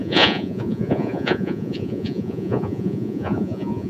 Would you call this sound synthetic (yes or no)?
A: yes